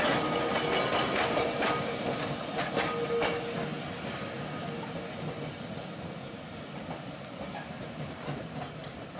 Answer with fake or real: real